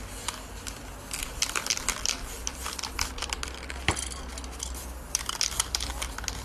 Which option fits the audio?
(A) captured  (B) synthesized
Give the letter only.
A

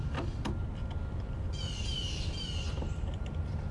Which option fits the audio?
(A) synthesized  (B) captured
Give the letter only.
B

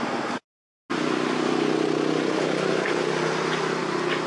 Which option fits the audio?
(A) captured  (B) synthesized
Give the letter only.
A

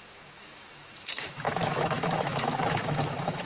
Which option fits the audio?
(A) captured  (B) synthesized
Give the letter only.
B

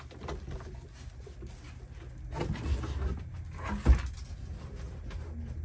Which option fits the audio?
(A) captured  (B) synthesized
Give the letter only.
A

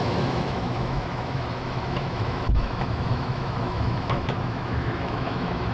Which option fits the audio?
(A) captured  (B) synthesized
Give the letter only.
B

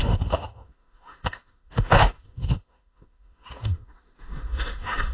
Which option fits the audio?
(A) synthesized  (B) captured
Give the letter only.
A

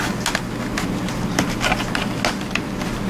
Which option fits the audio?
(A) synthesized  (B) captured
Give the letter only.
B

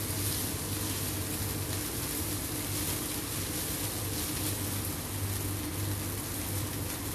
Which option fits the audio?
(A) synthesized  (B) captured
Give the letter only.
B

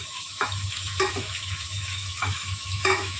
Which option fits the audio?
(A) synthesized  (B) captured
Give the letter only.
A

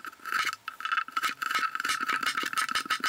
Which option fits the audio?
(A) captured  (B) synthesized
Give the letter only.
A